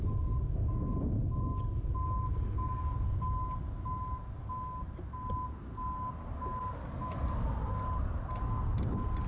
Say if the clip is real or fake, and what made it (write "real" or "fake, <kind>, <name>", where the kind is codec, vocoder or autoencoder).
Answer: real